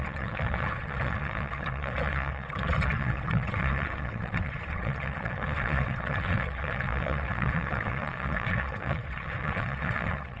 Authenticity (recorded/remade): remade